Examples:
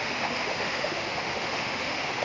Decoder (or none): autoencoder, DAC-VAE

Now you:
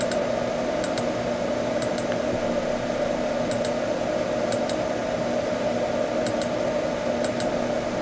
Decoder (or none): none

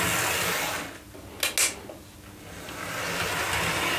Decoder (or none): none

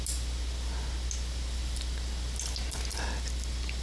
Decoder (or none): none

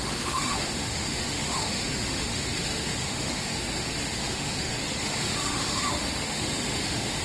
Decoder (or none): autoencoder, DAC-VAE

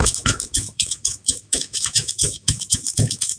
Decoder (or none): autoencoder, DAC-VAE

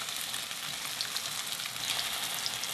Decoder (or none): none